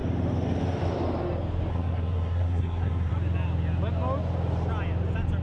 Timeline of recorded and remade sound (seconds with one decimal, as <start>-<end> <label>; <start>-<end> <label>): 0.0-1.7 recorded; 1.7-3.1 remade; 3.1-5.4 recorded

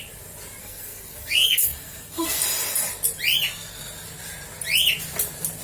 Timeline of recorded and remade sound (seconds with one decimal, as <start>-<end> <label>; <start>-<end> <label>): 0.0-0.6 recorded; 0.6-2.4 remade; 2.4-5.6 recorded

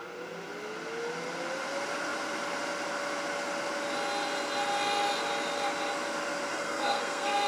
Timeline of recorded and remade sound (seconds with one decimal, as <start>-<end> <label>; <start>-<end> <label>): 0.0-6.5 recorded; 6.5-7.5 remade

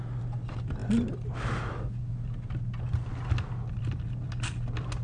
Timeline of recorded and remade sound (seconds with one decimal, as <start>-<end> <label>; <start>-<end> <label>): 0.0-5.0 recorded

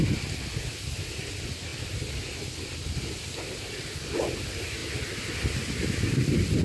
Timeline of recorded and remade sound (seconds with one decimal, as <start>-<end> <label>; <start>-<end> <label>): 0.0-6.6 recorded

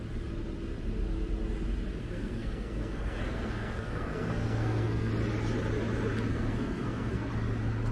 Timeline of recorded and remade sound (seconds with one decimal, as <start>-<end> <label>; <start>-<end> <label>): 0.0-2.0 recorded; 2.0-5.1 remade; 5.1-6.3 recorded; 6.3-7.3 remade; 7.3-7.9 recorded